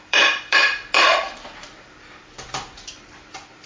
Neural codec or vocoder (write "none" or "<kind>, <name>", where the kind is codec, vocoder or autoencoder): vocoder, BigVGAN v2